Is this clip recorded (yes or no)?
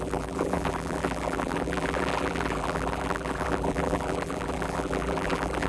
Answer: no